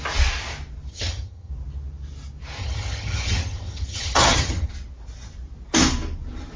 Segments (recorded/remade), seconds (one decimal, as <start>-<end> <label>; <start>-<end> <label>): 0.0-0.9 recorded; 0.9-1.5 remade; 1.5-2.6 recorded; 2.6-4.7 remade; 4.7-6.6 recorded